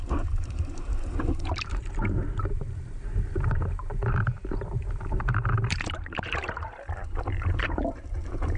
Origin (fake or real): fake